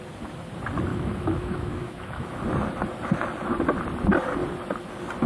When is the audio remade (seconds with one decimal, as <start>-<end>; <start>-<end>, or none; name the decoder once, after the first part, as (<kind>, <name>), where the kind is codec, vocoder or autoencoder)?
0.9-2.3 (autoencoder, DAC-VAE)